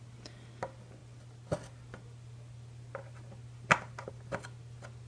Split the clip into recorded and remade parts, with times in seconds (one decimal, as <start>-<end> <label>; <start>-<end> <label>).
0.0-5.1 recorded